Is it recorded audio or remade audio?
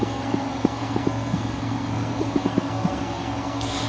remade